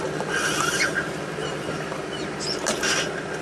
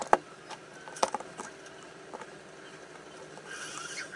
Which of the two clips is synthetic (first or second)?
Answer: second